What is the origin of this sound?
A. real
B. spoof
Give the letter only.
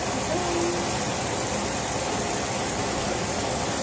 A